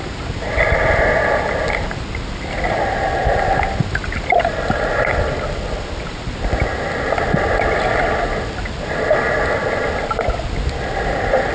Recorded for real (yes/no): yes